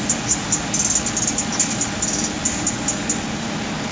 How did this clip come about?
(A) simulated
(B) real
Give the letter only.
B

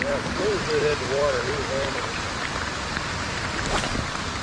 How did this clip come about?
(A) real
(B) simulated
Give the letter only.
B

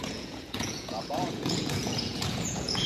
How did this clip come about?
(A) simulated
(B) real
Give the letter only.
A